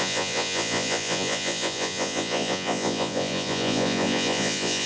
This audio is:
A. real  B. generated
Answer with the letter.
B